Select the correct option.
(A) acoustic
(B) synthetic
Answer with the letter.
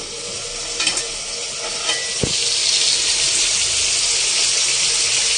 A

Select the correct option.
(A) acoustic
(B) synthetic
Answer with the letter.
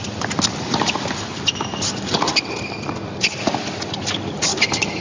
B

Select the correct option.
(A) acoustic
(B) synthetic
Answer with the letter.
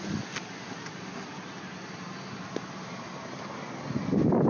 A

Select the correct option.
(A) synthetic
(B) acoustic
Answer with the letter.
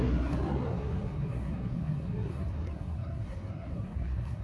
A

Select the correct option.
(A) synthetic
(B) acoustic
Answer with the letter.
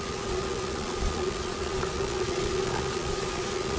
A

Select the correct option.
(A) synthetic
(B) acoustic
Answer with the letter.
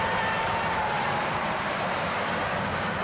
A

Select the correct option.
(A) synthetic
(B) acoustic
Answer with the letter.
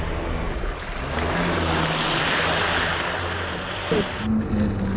B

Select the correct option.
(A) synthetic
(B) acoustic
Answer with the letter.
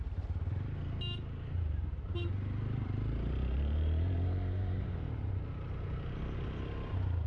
A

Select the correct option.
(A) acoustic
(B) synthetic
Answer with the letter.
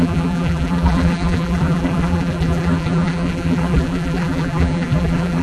B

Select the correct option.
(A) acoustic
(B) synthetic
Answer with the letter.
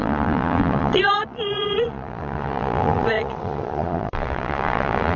B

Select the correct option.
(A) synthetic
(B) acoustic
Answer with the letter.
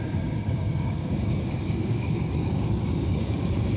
A